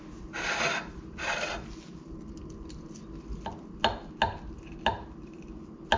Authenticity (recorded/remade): recorded